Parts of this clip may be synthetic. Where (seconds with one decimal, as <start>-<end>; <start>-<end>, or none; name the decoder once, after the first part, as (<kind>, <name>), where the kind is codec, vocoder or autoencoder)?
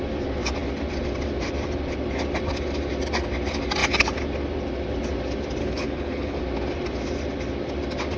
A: 5.6-6.4 (codec, HILCodec)